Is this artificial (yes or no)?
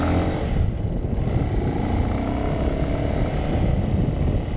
no